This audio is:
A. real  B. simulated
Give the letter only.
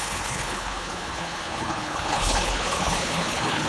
B